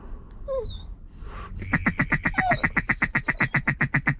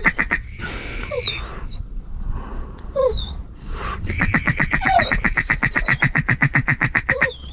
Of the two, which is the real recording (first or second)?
first